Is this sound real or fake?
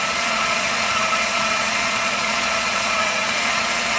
fake